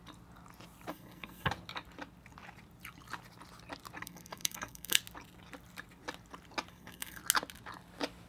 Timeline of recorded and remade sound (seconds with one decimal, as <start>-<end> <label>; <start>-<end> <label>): 0.0-0.9 recorded; 0.9-1.5 remade; 1.5-4.0 recorded; 4.0-5.0 remade; 5.0-6.7 recorded; 6.7-7.2 remade; 7.2-8.3 recorded